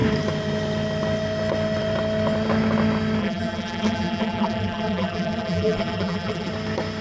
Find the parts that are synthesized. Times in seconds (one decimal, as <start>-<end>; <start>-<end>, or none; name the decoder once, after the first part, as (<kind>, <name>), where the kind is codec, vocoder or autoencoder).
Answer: 3.2-6.5 (vocoder, BigVGAN v2)